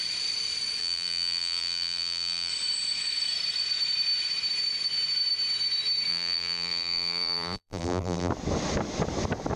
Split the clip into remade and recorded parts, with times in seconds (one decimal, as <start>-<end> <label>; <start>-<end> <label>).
0.0-0.8 recorded; 0.8-2.5 remade; 2.5-6.1 recorded; 6.1-8.3 remade; 8.3-9.6 recorded